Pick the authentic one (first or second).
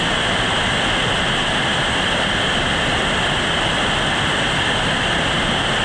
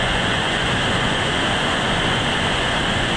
first